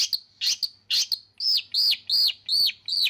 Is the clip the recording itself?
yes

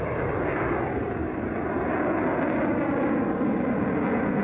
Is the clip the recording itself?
yes